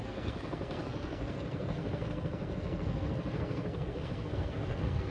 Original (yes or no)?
no